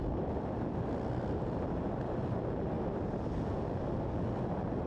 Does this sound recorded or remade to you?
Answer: recorded